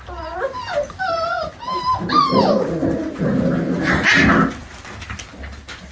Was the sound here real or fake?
real